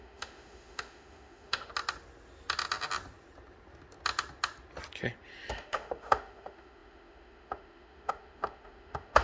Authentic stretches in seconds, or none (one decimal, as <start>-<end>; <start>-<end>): 1.7-5.5